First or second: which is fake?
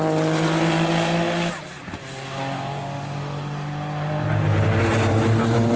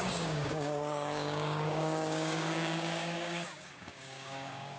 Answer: second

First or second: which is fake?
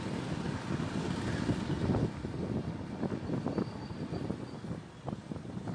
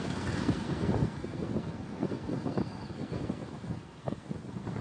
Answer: second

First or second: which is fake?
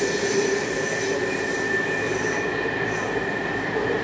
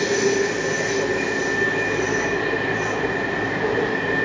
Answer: first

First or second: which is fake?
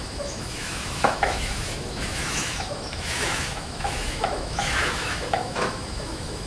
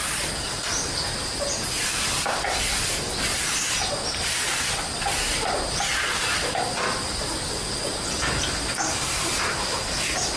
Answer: first